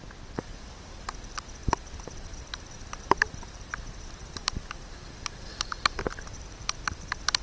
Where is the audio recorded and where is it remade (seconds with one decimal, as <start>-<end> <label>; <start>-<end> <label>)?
0.0-1.6 recorded; 1.6-6.0 remade; 6.0-7.4 recorded